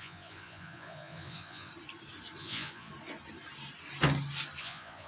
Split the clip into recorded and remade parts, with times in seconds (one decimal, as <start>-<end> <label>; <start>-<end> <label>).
0.0-1.7 remade; 1.7-2.4 recorded; 2.4-2.9 remade; 2.9-4.6 recorded; 4.6-5.1 remade